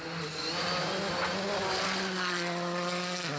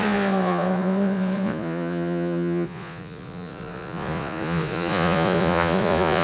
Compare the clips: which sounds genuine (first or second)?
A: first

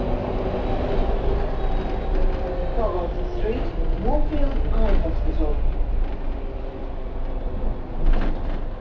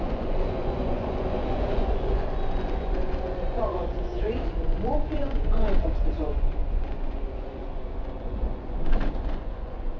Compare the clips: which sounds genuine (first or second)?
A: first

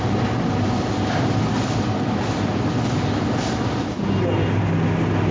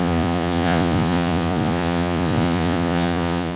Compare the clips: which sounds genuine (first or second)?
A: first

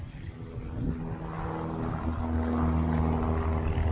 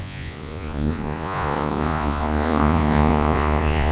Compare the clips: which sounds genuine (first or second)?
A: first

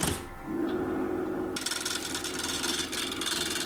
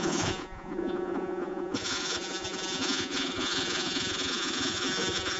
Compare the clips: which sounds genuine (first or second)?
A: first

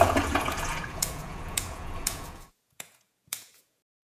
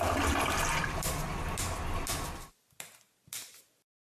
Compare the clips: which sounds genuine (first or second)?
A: second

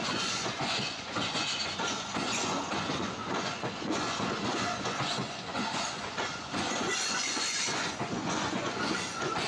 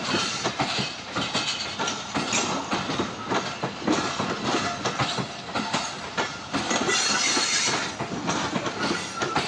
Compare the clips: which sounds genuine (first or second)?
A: second